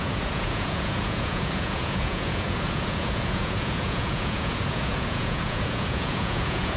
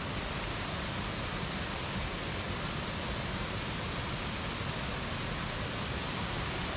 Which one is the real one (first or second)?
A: second